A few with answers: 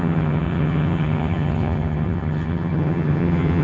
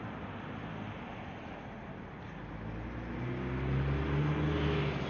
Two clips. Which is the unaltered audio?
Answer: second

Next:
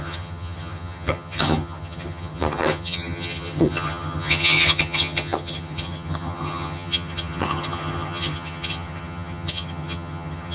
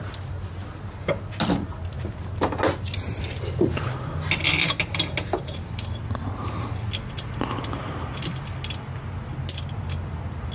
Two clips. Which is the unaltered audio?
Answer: second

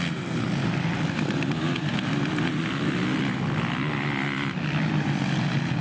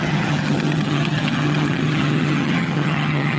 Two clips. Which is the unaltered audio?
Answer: first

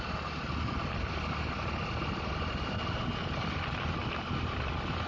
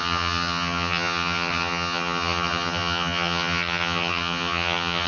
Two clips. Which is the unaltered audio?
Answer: first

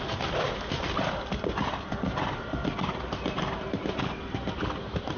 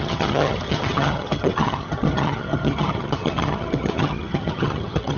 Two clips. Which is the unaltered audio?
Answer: first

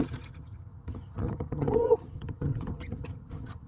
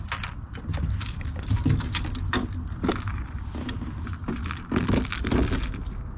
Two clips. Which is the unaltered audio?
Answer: second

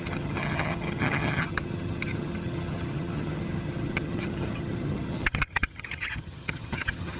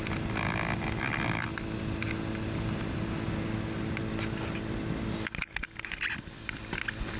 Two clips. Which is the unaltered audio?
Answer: second